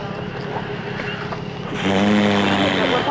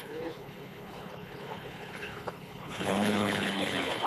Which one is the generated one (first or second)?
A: second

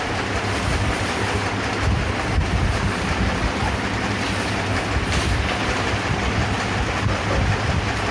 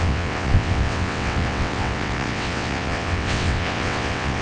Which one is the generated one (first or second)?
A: second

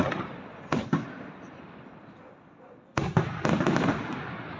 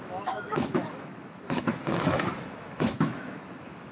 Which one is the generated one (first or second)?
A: second